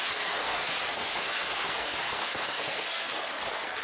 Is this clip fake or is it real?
fake